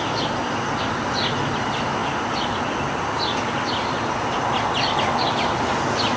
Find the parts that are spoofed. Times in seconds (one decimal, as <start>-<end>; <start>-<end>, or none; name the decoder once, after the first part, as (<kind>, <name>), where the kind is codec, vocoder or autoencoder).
none

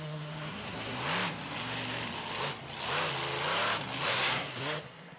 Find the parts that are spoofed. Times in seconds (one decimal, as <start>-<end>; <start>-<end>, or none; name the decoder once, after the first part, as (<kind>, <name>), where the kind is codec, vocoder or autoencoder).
0.0-1.0 (codec, SNAC); 4.1-5.2

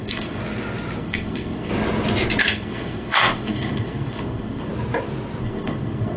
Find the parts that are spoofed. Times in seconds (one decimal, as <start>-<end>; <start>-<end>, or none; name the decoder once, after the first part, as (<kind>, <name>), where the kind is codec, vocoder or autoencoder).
0.0-0.4 (codec, SNAC); 1.0-1.7; 2.4-4.7; 5.4-6.2